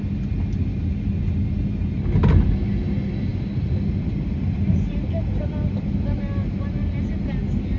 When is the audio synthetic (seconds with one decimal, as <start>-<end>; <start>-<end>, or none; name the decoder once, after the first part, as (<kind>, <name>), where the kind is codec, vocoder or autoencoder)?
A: none